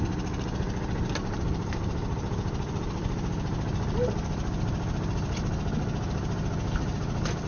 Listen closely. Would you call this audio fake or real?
real